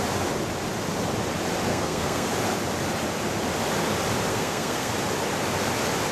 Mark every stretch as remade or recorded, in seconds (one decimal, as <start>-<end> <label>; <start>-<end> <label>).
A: 0.0-1.7 recorded; 1.7-2.3 remade; 2.3-4.3 recorded; 4.3-4.9 remade; 4.9-6.1 recorded